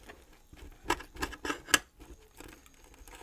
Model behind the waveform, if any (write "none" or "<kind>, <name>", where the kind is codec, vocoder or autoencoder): none